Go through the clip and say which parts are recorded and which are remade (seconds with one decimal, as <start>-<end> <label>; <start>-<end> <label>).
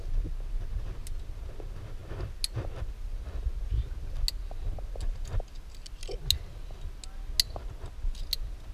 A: 0.0-8.7 recorded